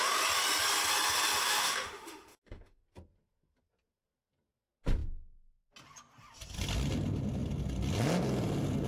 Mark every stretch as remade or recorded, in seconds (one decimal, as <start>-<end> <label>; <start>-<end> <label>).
0.0-1.4 recorded; 1.4-2.8 remade; 2.8-8.9 recorded